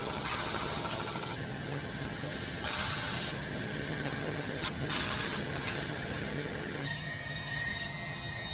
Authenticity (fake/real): fake